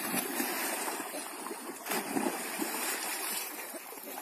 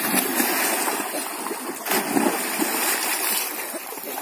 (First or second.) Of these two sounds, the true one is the second